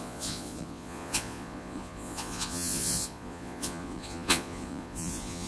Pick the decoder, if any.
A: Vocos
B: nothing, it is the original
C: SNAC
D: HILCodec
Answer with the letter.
A